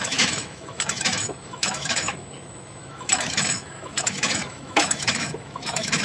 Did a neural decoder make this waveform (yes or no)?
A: yes